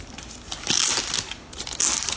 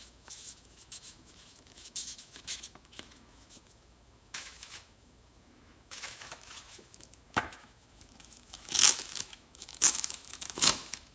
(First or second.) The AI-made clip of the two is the second